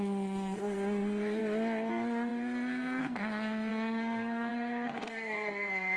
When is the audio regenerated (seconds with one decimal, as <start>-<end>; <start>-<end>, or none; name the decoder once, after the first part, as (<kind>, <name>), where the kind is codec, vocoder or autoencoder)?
0.0-1.4 (codec, SNAC); 1.9-6.0